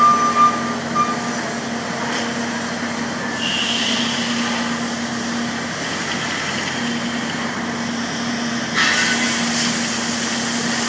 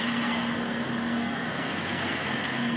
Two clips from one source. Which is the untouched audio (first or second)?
first